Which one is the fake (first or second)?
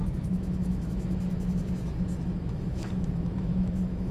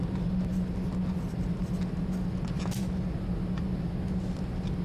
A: first